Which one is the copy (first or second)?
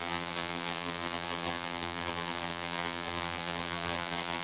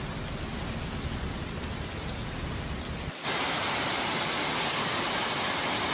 first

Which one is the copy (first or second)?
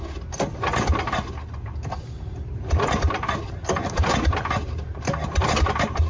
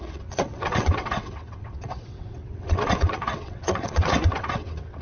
second